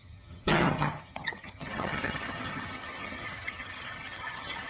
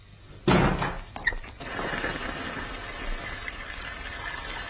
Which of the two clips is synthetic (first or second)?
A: first